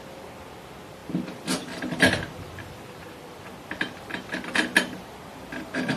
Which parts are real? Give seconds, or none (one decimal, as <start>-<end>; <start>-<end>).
0.0-6.0